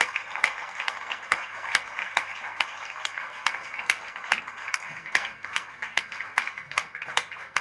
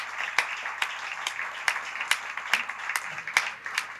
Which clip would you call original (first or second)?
second